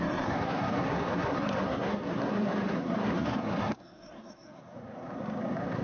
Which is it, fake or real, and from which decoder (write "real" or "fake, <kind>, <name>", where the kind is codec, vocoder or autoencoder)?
fake, codec, SNAC